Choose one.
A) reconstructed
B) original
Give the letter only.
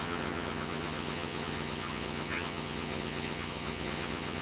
A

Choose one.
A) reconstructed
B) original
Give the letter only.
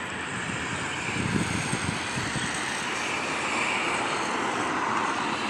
A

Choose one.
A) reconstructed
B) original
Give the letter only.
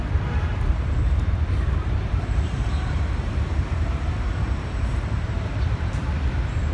A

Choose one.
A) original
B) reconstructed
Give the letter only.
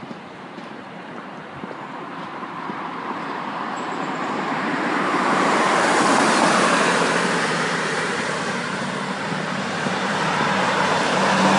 B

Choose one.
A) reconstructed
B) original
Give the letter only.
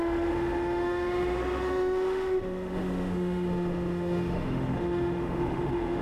A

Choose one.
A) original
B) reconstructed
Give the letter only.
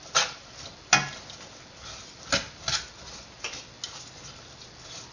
A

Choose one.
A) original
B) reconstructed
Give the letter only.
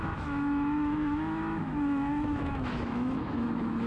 B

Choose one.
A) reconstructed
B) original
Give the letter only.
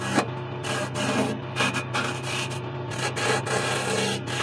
B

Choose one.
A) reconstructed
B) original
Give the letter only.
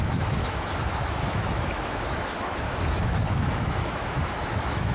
A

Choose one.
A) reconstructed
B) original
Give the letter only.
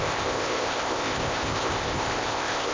A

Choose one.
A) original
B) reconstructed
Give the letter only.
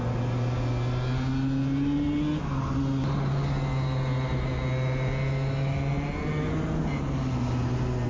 A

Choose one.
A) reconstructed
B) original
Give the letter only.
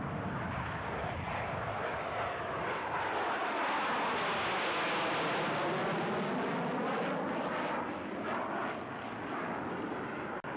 B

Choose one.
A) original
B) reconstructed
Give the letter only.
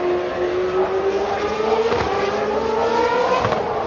A